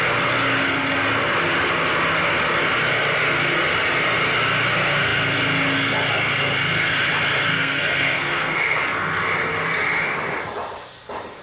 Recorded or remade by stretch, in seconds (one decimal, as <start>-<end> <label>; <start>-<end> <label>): 0.0-7.5 recorded; 7.5-8.8 remade; 8.8-11.4 recorded